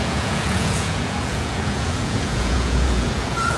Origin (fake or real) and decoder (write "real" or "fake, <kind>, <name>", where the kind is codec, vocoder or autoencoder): fake, vocoder, Vocos